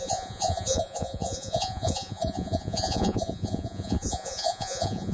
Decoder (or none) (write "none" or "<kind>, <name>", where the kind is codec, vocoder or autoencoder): vocoder, Vocos